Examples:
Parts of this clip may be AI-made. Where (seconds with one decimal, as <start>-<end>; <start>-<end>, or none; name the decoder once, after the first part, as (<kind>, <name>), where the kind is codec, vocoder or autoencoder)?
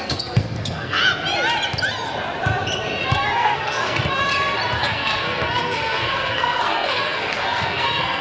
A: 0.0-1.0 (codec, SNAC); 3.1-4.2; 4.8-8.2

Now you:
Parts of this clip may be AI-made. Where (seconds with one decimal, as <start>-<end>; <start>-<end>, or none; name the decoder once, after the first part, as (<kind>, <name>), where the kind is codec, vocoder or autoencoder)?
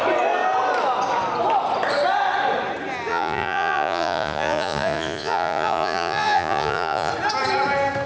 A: 3.1-7.1 (vocoder, Vocos)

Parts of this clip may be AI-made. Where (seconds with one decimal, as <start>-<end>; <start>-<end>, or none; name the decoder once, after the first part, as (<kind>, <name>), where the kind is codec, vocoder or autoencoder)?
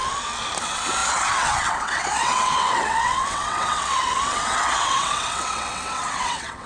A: 0.6-6.7 (vocoder, WaveNeXt)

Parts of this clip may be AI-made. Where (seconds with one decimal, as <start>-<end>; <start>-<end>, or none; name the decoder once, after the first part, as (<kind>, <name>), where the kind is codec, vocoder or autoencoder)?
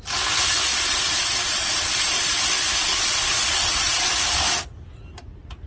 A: 0.7-2.4 (vocoder, Vocos); 2.8-4.1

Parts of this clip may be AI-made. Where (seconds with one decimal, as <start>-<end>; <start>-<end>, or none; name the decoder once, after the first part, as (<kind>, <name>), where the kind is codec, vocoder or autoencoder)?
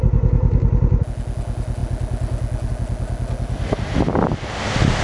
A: none